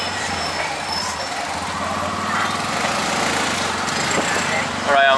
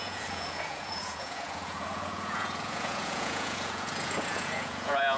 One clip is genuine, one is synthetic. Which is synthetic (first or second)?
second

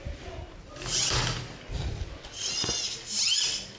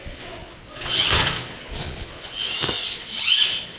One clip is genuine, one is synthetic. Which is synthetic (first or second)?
second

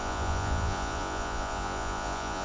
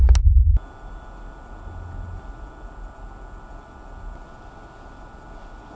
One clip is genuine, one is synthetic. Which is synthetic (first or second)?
first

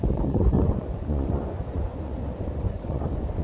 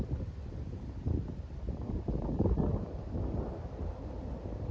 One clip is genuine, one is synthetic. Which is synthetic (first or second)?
first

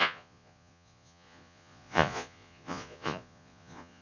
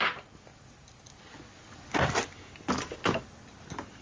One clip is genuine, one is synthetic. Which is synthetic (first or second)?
first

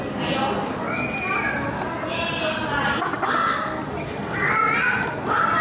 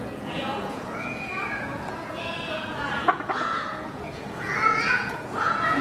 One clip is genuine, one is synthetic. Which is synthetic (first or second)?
second